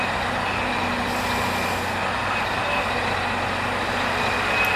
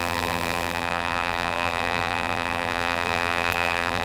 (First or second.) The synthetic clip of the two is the second